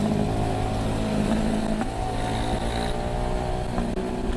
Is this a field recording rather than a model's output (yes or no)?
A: yes